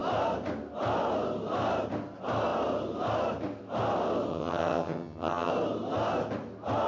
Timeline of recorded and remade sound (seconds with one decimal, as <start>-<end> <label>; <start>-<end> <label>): 0.0-4.3 recorded; 4.3-5.5 remade; 5.5-6.9 recorded